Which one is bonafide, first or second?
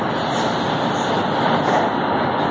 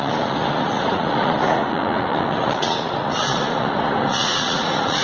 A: first